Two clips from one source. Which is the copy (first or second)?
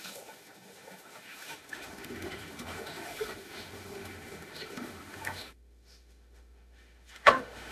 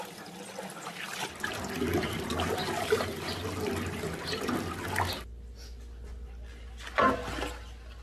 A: first